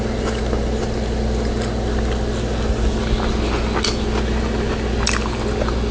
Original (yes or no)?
yes